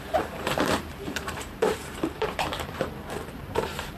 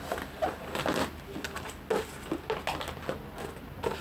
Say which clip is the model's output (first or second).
first